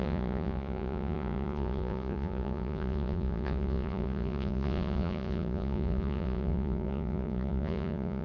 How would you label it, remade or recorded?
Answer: remade